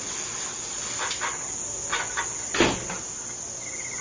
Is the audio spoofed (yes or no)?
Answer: no